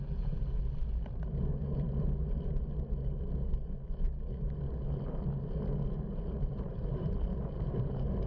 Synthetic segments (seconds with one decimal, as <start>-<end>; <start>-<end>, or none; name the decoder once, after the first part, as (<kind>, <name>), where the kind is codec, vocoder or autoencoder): 6.1-7.3 (vocoder, BigVGAN v2)